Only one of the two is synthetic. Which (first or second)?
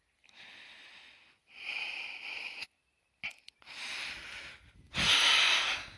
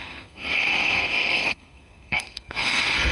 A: second